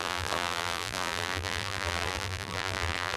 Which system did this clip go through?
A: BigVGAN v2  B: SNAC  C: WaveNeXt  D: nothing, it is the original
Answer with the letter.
A